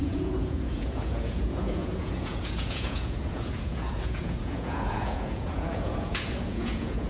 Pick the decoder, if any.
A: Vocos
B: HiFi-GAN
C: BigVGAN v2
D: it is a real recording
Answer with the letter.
A